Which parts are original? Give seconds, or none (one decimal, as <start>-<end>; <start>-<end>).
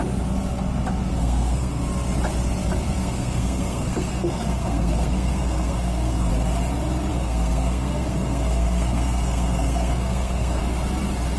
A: 0.0-1.1; 1.8-3.0; 6.3-7.1; 10.6-11.4